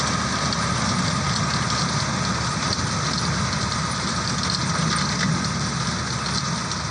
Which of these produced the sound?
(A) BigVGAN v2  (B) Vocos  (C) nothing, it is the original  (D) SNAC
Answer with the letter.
C